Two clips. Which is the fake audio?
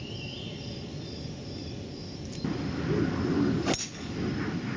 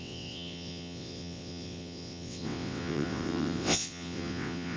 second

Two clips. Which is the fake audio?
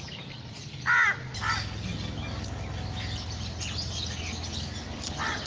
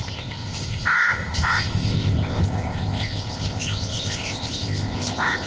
second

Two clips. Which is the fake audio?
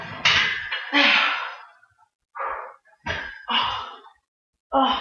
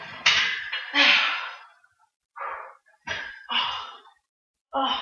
second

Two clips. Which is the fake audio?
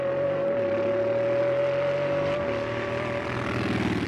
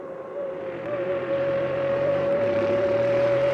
second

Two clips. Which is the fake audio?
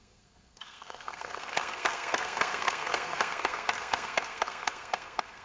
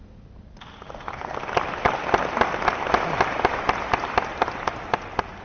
first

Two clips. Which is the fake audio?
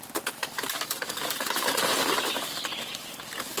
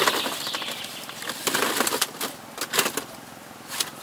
first